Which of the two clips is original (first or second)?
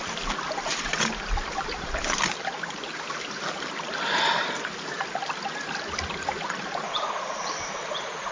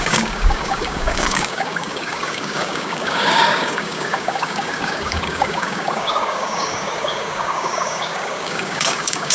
first